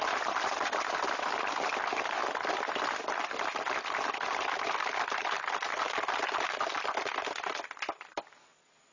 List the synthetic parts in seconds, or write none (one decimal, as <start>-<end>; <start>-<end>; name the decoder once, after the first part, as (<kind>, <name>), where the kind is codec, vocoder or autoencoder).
none

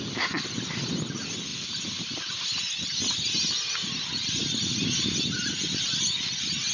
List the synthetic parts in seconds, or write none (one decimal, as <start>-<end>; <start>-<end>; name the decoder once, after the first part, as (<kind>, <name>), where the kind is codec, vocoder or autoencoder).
none

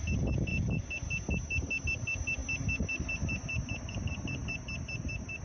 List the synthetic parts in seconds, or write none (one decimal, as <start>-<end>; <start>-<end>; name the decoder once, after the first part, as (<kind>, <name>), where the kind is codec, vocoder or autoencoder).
none